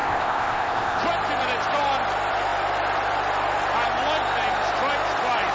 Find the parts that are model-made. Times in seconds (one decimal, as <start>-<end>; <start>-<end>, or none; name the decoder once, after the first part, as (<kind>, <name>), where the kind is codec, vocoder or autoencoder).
0.0-1.0 (codec, ZipCodec)